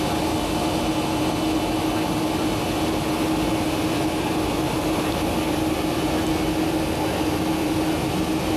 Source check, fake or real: real